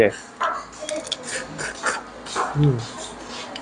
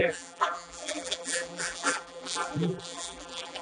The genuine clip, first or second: first